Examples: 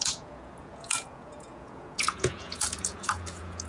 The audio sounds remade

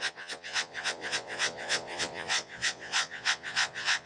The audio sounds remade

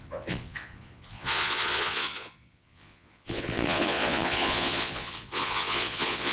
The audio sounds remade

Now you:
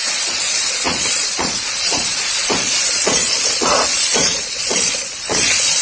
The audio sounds remade